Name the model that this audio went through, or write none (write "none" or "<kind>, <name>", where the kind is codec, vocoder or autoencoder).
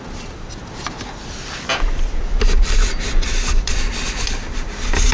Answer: vocoder, BigVGAN v2